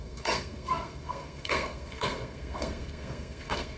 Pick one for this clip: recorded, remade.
remade